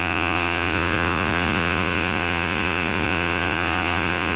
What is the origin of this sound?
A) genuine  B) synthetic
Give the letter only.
B